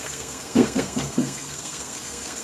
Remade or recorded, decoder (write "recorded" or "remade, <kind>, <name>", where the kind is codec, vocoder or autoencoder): remade, codec, SNAC